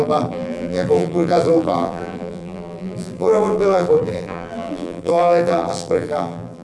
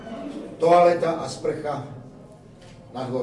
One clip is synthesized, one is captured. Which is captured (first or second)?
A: second